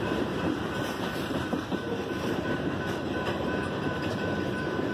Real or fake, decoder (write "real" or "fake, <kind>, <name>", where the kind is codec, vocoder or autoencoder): fake, vocoder, BigVGAN v2